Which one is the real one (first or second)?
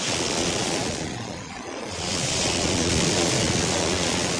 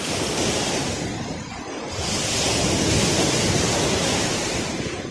second